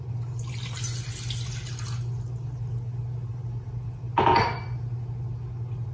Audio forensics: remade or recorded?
recorded